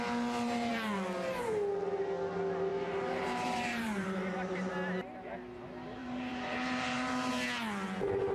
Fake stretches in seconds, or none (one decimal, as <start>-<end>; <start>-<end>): 2.7-4.7; 6.0-7.3